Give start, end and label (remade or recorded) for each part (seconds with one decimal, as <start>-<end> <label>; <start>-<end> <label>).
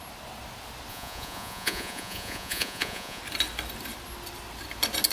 0.0-0.9 recorded; 0.9-3.2 remade; 3.2-5.1 recorded